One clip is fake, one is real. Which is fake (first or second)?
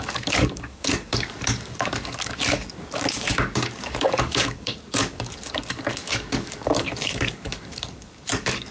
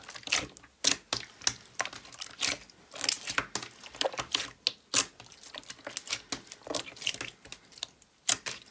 first